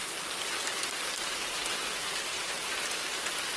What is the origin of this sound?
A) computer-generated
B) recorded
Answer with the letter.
B